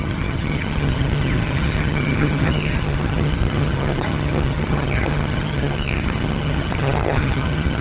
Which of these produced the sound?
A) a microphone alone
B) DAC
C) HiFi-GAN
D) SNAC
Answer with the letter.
C